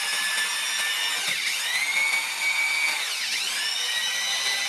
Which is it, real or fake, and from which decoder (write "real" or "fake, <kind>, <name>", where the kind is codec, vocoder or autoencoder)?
real